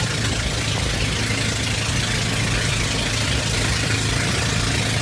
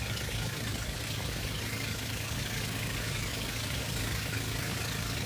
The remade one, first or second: second